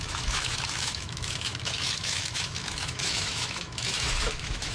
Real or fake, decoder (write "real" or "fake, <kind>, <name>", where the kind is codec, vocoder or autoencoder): fake, autoencoder, DAC-VAE